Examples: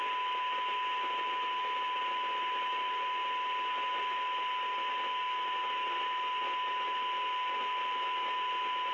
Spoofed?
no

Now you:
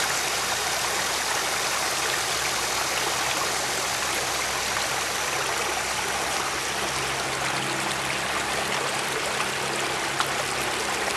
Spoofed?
no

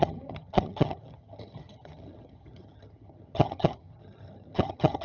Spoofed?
yes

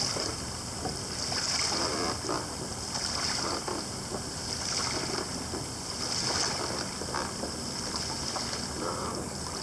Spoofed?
no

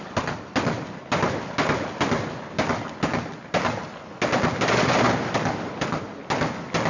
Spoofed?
no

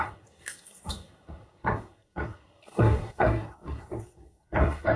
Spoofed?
yes